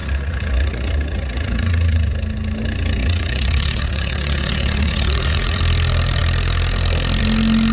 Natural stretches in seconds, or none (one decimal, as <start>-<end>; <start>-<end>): 2.1-3.0; 5.6-7.7